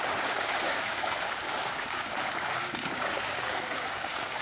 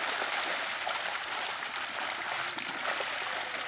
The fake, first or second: first